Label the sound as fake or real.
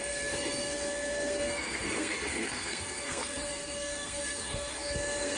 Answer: fake